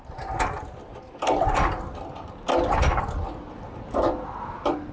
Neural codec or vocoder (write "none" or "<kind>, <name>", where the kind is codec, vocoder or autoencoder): none